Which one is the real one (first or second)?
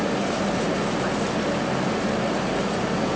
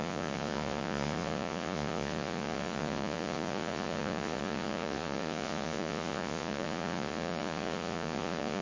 first